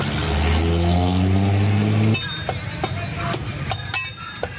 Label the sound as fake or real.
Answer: real